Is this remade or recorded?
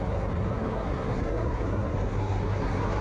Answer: remade